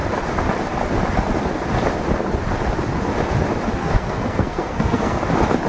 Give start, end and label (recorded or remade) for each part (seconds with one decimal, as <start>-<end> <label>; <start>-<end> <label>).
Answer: 0.0-3.8 recorded; 3.8-5.2 remade; 5.2-5.7 recorded